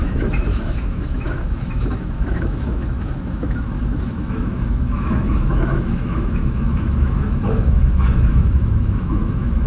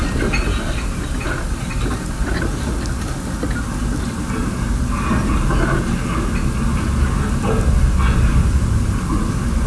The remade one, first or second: first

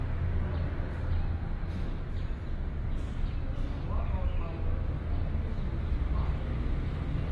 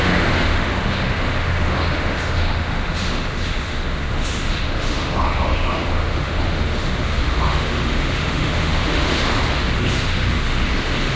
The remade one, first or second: second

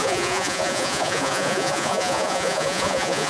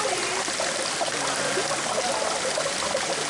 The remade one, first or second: first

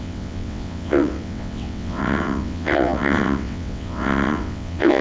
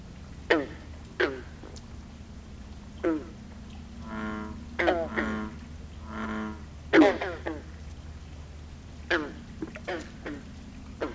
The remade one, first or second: first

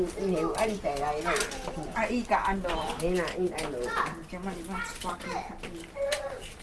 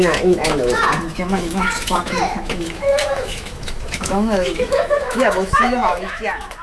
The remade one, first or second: second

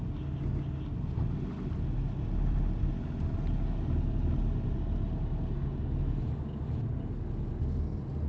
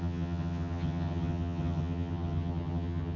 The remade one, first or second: second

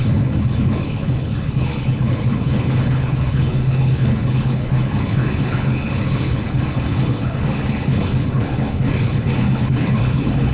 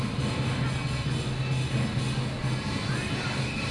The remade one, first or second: first